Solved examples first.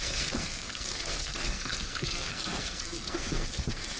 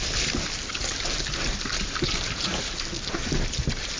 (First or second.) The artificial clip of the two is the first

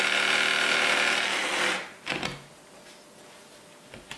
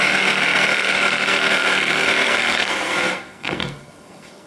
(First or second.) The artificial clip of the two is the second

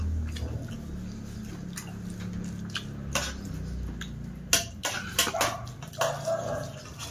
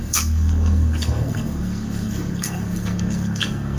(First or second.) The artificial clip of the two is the second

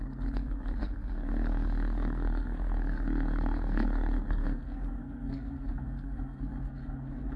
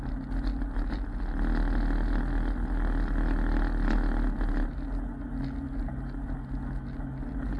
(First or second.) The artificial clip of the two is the first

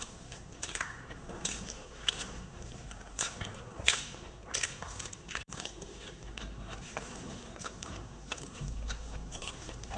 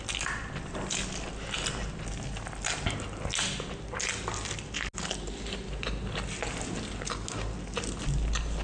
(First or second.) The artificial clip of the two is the first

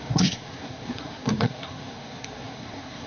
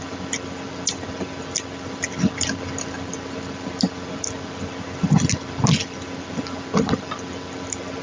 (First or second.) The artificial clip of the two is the first